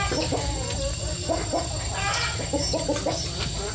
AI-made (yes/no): no